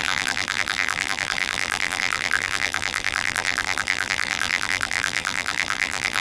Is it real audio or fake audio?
fake